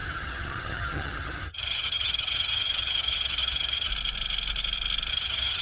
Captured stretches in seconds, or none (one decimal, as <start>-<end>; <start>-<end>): 3.9-5.1